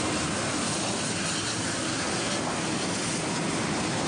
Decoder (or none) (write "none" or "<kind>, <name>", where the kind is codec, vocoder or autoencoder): none